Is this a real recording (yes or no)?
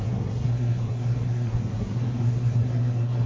no